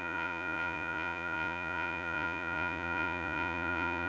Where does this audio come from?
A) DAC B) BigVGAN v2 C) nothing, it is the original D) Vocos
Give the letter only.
D